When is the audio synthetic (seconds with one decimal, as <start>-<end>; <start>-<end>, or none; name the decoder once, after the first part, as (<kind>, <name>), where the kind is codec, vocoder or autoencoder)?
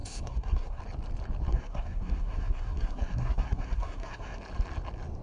0.0-0.8 (codec, SNAC); 1.5-4.4